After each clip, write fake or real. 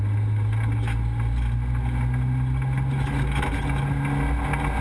real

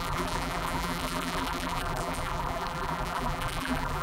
fake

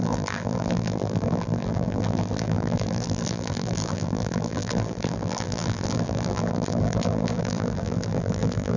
fake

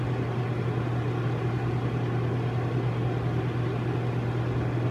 real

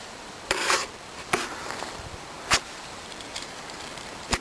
fake